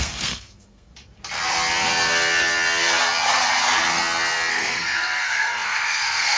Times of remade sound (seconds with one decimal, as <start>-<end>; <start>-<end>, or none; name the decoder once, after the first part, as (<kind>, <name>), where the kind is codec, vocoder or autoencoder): 0.0-0.9 (codec, SNAC); 4.5-6.4